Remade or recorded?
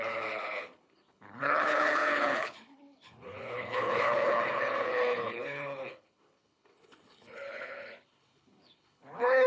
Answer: remade